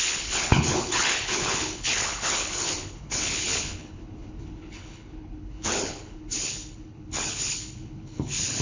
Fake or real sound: fake